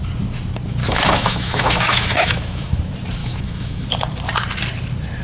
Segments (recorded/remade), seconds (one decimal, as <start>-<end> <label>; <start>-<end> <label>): 0.0-0.8 recorded; 0.8-2.8 remade; 2.8-3.2 recorded; 3.2-3.8 remade; 3.8-5.2 recorded